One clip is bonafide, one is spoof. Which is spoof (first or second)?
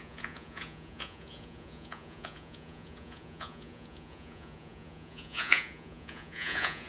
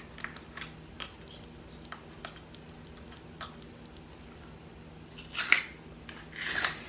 first